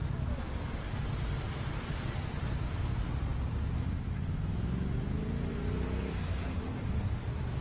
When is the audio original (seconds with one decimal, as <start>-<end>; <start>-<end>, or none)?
0.0-7.6